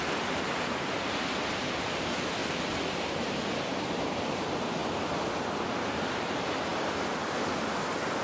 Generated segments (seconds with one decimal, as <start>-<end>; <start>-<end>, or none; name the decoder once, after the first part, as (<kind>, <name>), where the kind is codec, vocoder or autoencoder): none